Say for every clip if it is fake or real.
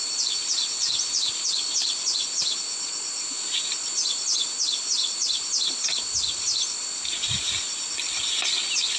real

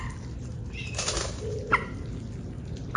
real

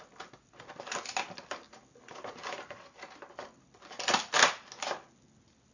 real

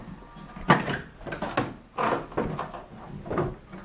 real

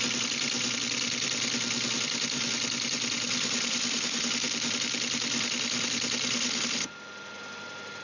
real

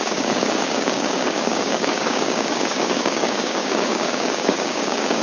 fake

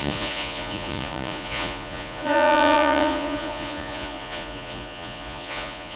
fake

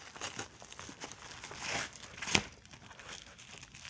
real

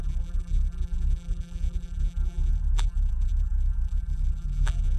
fake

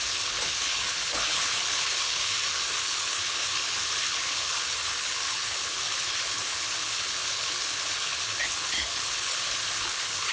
fake